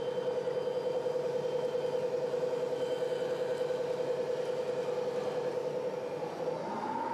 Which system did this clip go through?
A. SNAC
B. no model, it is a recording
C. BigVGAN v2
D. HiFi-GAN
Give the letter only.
B